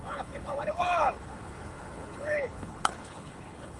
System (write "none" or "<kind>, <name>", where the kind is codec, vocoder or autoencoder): codec, HILCodec